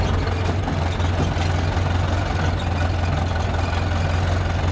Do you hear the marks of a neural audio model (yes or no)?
no